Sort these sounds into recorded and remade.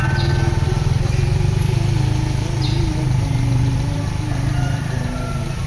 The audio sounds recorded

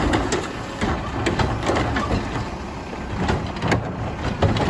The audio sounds recorded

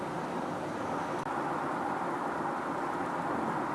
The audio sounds recorded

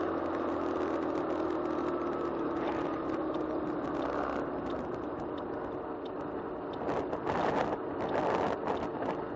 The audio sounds recorded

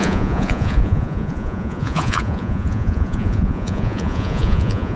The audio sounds remade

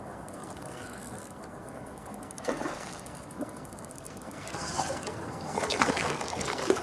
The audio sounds remade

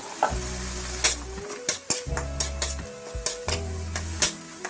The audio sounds recorded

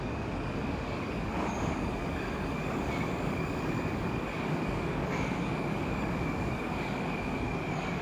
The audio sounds remade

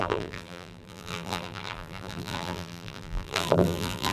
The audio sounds remade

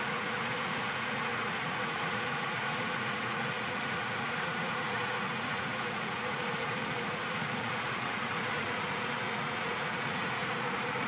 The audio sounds remade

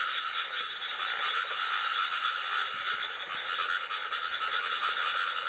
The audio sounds recorded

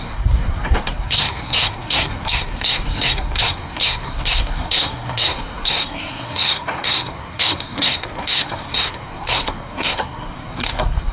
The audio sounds remade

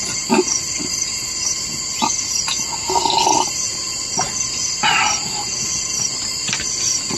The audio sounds recorded